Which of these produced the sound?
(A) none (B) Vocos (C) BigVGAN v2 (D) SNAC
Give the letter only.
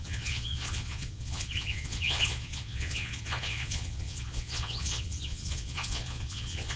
B